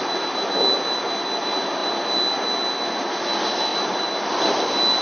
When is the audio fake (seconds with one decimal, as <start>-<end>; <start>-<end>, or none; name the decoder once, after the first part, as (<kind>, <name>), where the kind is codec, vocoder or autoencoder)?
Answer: 3.7-4.6 (vocoder, BigVGAN v2)